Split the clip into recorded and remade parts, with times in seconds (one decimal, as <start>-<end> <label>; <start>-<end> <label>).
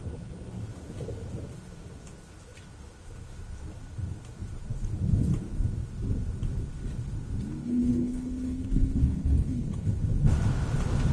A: 0.0-7.6 recorded; 7.6-10.0 remade; 10.0-11.1 recorded